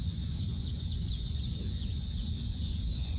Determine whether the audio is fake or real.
fake